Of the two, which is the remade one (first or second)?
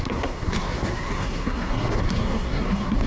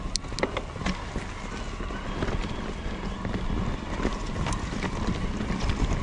first